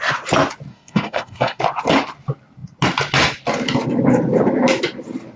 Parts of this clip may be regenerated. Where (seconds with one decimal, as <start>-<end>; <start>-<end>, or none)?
0.7-1.6